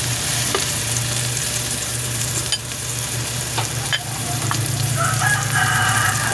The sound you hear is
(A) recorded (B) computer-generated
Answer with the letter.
B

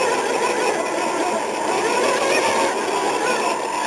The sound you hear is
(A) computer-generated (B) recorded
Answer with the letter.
B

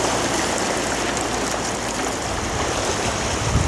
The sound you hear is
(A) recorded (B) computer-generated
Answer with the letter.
B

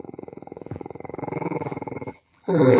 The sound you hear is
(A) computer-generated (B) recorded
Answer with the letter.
A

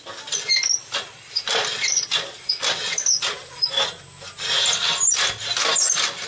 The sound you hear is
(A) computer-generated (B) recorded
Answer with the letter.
B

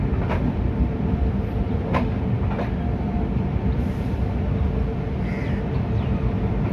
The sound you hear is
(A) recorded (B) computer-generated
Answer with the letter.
B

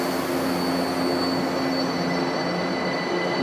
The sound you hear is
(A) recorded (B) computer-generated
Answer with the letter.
A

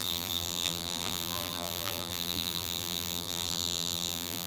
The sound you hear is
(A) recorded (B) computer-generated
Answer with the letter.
B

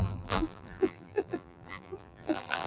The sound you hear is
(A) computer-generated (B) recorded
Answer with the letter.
A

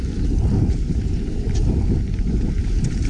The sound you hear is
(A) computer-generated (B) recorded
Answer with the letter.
A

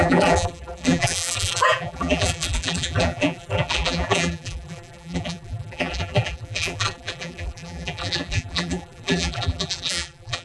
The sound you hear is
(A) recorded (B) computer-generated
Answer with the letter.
B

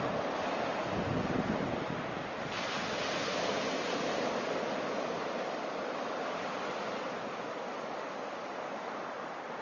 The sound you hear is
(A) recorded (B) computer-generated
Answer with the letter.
A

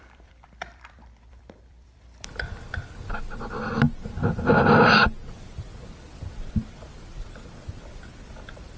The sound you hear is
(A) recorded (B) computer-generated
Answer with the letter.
B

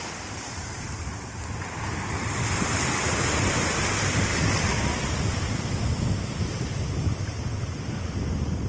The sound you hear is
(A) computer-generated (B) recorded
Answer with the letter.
B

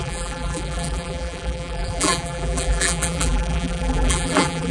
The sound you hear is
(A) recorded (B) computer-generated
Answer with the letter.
B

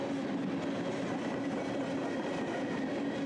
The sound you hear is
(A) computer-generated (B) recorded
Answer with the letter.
A